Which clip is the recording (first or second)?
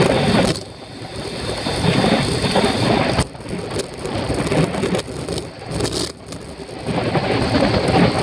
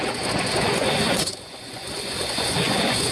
first